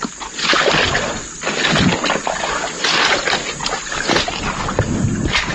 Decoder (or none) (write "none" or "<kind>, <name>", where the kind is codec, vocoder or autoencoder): none